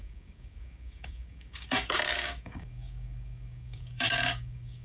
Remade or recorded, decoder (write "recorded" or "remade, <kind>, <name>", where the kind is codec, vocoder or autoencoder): remade, codec, DAC